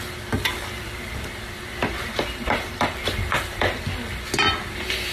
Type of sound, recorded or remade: recorded